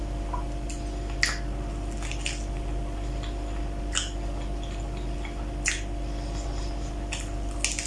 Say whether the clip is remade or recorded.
recorded